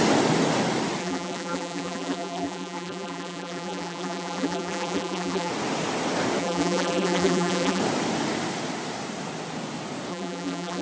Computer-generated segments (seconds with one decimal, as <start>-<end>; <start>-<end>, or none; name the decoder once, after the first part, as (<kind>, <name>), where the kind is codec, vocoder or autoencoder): 1.0-5.5 (vocoder, BigVGAN v2); 6.4-7.8; 10.1-10.8